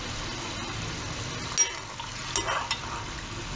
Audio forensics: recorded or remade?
recorded